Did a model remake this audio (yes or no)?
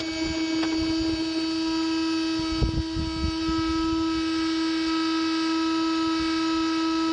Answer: no